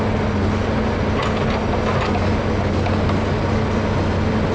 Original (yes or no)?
yes